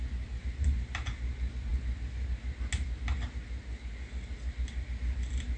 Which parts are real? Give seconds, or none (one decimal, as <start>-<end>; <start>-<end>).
0.0-5.6

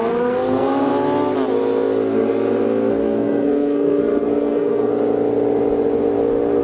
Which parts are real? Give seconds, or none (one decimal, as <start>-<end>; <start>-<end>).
0.9-2.9; 4.9-6.6

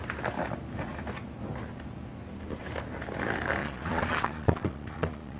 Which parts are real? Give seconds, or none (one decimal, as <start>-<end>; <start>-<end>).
0.0-3.6

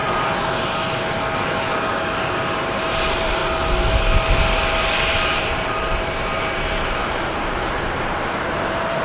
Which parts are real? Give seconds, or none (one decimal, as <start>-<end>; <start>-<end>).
0.0-2.3; 3.4-5.1

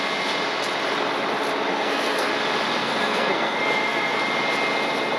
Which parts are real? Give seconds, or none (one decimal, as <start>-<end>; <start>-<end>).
0.0-1.7; 2.3-2.8; 4.2-5.2

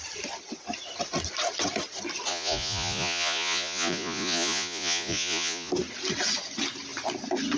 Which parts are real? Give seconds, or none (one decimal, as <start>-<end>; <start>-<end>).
0.0-2.3; 5.7-7.6

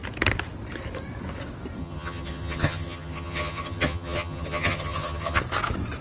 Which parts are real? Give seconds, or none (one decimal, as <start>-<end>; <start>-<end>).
0.0-1.8; 5.4-6.0